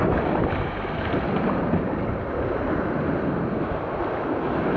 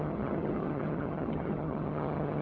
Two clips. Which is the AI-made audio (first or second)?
second